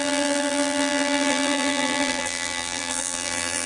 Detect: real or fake fake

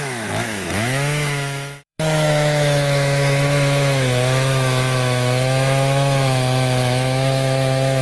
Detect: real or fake fake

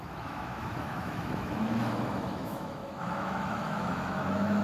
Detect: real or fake fake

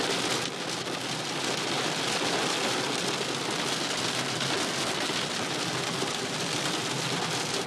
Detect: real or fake real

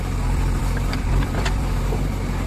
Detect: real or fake fake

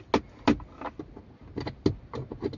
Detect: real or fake real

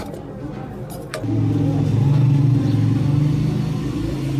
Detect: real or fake real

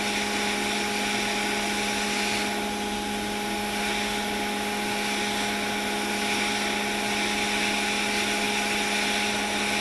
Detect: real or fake real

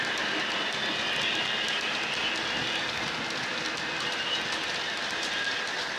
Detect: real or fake real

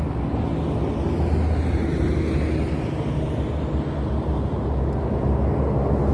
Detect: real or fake real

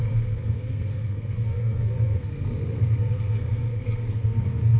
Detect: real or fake fake